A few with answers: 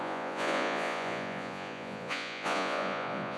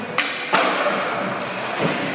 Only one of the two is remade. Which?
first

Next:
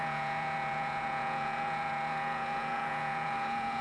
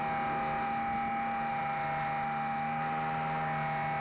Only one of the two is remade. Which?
first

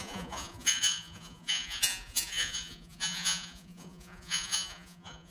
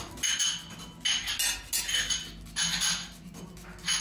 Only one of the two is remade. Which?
first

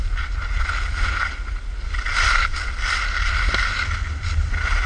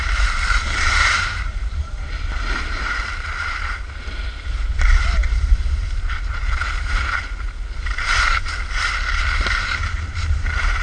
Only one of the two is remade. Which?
second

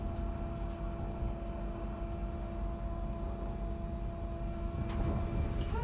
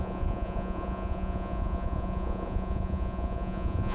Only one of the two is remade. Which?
second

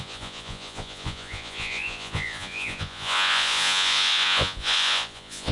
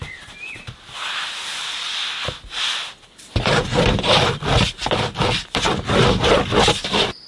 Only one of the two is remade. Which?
first